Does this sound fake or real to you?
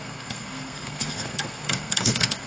fake